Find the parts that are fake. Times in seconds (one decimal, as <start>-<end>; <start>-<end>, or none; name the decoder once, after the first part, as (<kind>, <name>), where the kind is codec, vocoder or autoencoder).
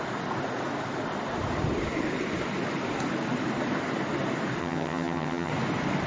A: 4.6-5.5 (vocoder, HiFi-GAN)